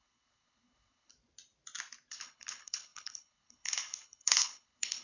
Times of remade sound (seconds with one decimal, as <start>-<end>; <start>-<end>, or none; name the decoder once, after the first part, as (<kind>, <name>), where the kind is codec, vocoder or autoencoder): 0.0-1.1 (codec, HILCodec); 2.1-5.0